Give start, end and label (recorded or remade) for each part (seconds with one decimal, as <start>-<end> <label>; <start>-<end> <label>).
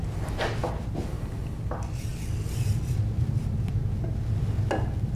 0.0-5.2 recorded